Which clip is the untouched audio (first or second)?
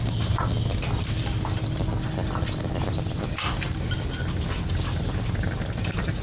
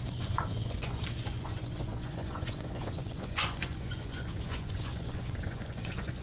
first